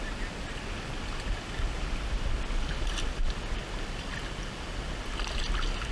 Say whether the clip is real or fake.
real